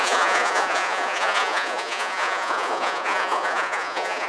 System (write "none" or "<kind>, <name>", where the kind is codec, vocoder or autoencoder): vocoder, Vocos